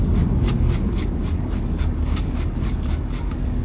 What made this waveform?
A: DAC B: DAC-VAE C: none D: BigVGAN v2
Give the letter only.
A